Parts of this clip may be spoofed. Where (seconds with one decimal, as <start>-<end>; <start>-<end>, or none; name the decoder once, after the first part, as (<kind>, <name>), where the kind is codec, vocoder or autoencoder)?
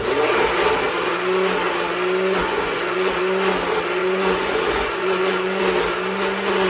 2.4-3.2 (vocoder, Vocos); 4.0-5.6